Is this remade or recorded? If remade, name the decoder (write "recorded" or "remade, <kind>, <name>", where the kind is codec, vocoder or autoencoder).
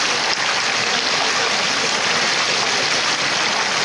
recorded